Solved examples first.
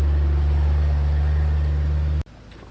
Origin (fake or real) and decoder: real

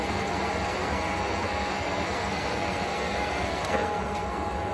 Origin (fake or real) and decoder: fake, codec, SNAC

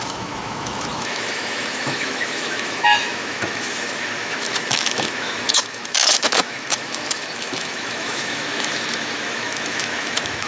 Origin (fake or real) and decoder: fake, autoencoder, DAC-VAE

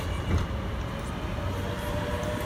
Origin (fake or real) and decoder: real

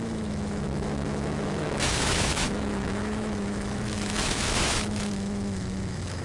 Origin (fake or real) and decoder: fake, autoencoder, DAC-VAE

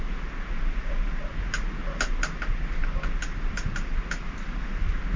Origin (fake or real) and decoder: real